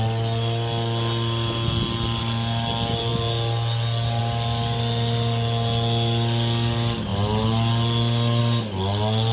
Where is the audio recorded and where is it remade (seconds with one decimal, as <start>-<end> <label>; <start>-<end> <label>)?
0.0-9.3 recorded